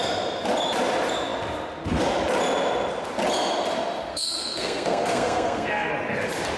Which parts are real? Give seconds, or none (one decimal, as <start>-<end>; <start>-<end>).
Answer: 0.0-4.1; 5.9-6.6